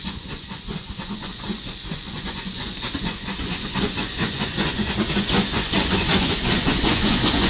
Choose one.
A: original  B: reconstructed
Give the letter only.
B